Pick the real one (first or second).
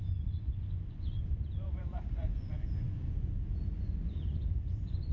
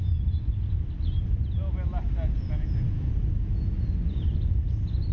second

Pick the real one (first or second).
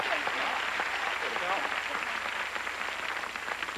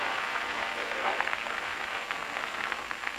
first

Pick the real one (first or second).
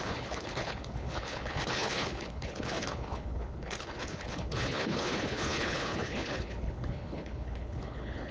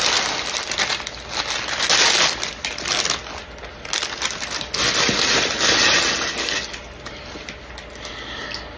second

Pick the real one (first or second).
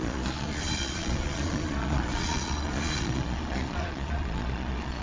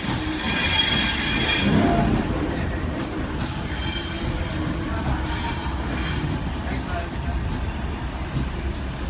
second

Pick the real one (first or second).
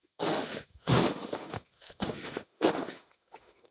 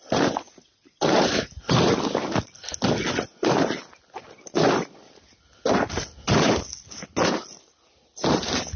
second